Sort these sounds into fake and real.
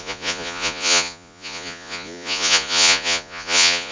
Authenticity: fake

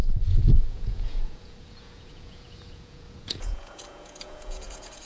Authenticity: fake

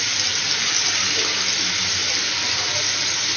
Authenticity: real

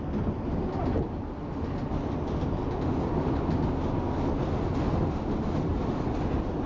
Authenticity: real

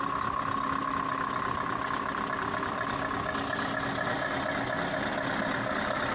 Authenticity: real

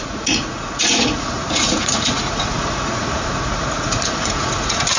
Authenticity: fake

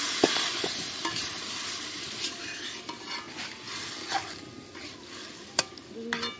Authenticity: real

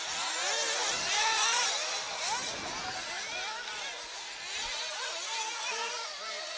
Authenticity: real